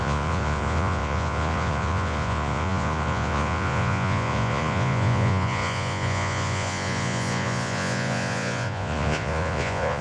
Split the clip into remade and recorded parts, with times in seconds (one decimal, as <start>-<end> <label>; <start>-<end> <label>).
0.0-10.0 remade